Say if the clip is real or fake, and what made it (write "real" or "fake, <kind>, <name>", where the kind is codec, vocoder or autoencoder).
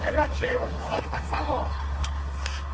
fake, codec, SNAC